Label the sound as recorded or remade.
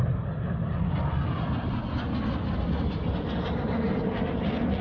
recorded